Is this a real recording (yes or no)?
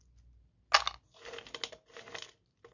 yes